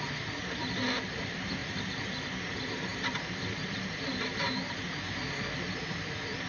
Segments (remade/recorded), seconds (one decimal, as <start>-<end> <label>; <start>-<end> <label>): 0.0-6.5 recorded